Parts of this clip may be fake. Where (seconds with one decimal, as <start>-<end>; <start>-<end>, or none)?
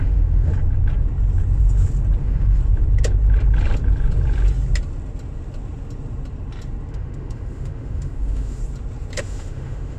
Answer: 0.0-0.5; 2.2-2.6; 6.9-8.6; 9.2-10.0